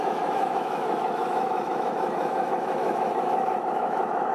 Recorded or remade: remade